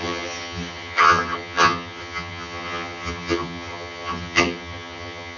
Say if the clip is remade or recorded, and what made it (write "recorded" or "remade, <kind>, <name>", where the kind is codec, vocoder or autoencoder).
remade, vocoder, HiFi-GAN